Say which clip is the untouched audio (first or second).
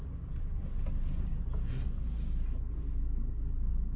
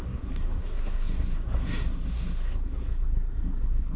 first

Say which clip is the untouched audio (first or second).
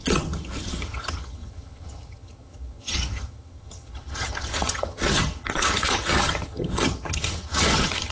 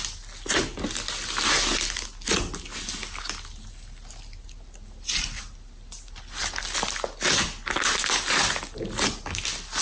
second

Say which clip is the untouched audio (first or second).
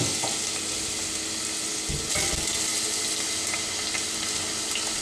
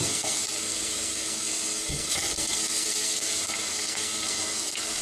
first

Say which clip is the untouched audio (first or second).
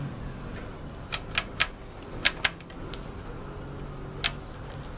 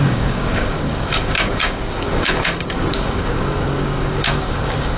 first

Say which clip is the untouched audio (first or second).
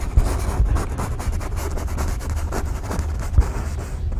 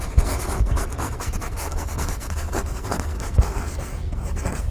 first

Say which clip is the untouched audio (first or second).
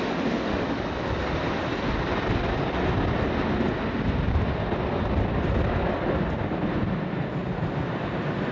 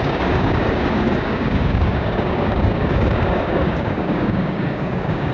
first